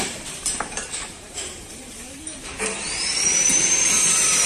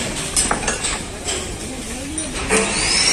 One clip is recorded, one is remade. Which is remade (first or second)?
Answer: first